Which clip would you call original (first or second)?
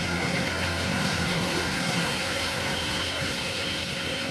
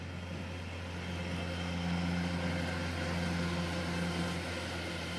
second